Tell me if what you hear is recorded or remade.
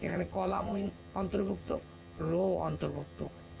remade